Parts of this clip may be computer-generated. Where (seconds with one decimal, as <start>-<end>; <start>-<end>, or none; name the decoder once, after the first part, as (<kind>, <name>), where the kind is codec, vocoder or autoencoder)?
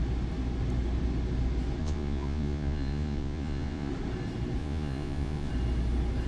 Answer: 1.8-3.9 (vocoder, Vocos); 4.6-5.5